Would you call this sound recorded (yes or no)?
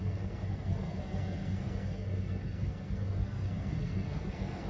no